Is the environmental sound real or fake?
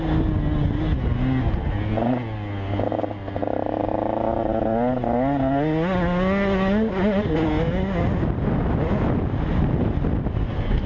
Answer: real